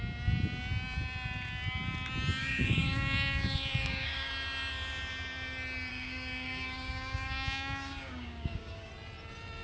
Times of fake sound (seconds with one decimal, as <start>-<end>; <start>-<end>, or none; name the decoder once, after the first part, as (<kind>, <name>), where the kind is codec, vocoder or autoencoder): 2.4-4.3 (codec, DAC); 5.9-8.9